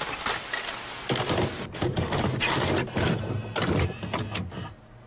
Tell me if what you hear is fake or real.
real